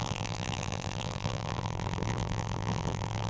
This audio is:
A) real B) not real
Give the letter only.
B